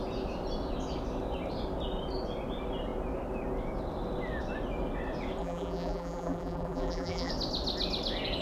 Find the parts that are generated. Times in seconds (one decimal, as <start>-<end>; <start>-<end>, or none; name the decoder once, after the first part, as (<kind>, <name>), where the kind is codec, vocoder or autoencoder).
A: 5.4-7.3 (vocoder, BigVGAN v2)